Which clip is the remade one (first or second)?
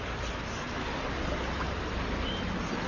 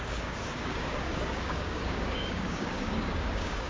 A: second